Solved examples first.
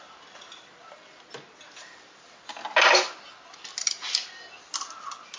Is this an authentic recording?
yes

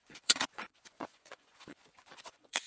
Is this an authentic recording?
no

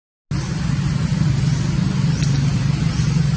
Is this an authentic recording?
yes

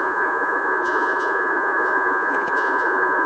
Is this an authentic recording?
no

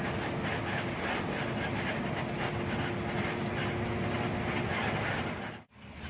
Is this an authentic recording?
yes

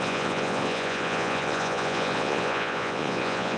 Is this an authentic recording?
no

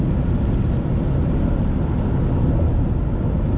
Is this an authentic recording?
yes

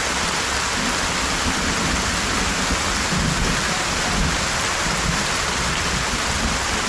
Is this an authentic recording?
yes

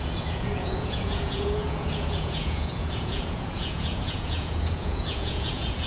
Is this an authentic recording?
no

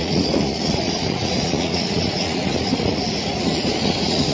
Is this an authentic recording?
no